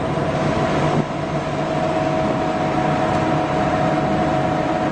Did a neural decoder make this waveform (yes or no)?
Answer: no